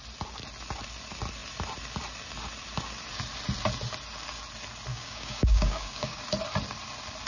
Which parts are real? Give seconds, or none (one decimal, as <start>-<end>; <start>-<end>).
0.0-4.9; 6.2-7.3